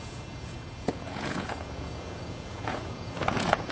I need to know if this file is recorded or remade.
remade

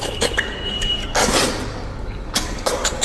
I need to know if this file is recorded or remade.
remade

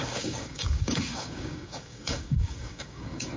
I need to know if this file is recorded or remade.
remade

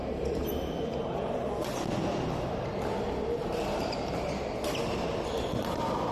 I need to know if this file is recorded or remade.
recorded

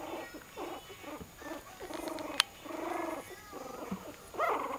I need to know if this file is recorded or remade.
recorded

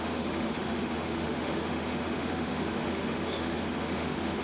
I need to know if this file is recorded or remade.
remade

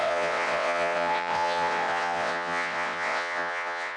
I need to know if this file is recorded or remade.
remade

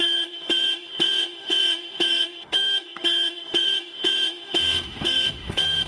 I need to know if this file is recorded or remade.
remade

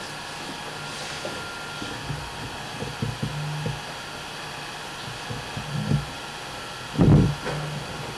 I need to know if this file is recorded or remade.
recorded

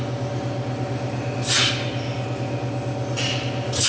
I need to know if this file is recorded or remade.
recorded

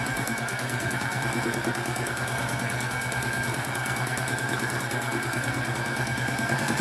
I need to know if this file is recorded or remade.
remade